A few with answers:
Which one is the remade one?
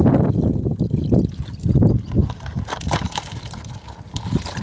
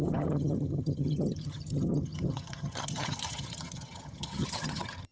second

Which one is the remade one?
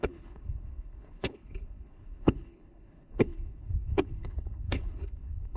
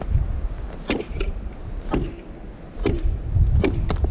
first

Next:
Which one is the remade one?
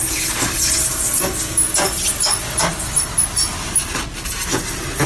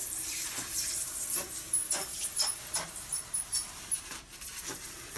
second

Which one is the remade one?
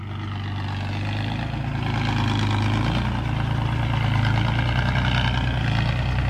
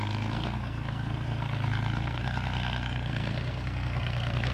second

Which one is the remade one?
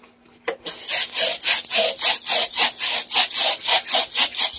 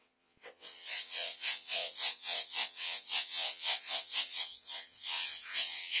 second